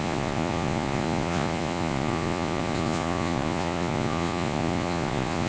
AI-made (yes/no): yes